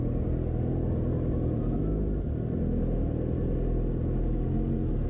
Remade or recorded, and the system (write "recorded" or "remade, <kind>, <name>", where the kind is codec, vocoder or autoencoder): recorded